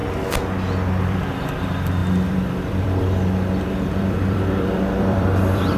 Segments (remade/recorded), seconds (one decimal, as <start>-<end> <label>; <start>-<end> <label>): 0.0-1.0 recorded; 1.0-5.8 remade